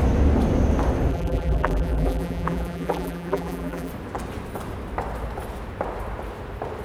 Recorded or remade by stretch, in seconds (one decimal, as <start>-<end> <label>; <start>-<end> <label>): 0.0-1.1 recorded; 1.1-3.9 remade; 3.9-6.8 recorded